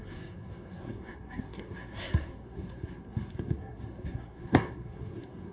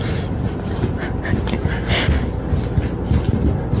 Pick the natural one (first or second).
second